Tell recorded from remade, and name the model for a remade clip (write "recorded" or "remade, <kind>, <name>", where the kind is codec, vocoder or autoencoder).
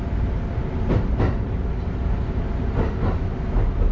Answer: recorded